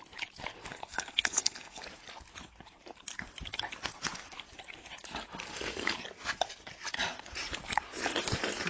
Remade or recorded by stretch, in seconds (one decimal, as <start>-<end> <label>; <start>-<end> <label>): 0.0-0.7 recorded; 0.7-1.8 remade; 1.8-8.7 recorded